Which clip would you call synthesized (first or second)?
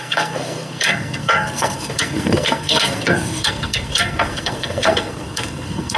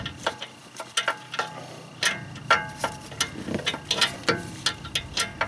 first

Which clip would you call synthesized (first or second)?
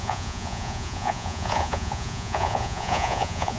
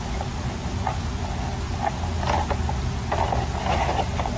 first